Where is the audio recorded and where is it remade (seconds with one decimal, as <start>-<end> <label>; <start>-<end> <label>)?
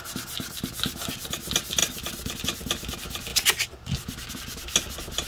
0.0-5.3 recorded